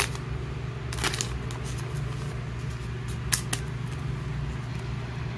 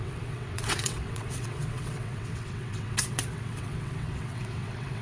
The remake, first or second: second